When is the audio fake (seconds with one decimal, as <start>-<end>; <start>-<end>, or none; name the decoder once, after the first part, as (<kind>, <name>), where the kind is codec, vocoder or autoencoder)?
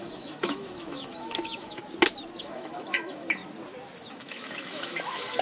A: 0.0-1.8 (autoencoder, DAC-VAE); 2.4-3.4; 4.1-5.4